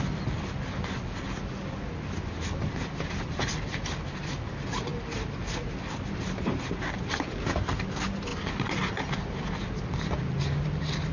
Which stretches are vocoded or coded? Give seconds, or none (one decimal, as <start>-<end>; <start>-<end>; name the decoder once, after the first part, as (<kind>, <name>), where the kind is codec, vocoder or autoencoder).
none